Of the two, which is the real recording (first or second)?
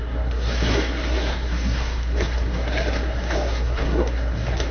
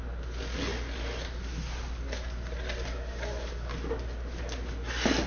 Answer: second